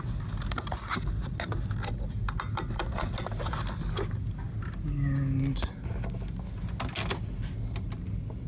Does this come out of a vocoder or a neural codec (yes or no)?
no